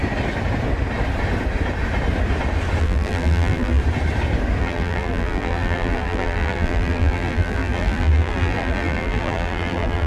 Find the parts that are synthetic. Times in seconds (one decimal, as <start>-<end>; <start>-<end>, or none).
2.8-3.8; 4.6-10.1